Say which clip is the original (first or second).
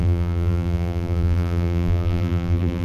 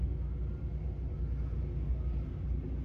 second